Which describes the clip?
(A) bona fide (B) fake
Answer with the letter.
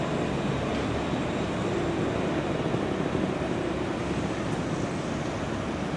A